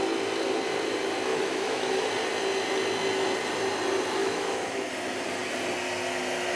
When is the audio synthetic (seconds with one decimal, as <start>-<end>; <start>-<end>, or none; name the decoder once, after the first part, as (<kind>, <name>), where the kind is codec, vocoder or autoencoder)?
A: 1.3-1.9 (autoencoder, DAC-VAE); 4.2-4.9